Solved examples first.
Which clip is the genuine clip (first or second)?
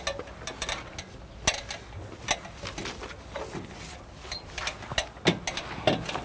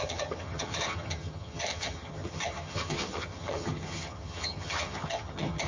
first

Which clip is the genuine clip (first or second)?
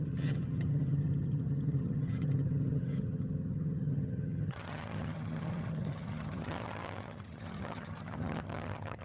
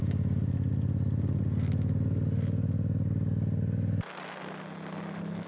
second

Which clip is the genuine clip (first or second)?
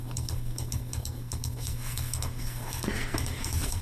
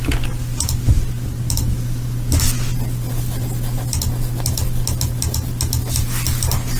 second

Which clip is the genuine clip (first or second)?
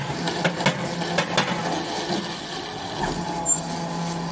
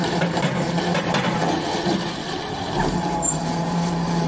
first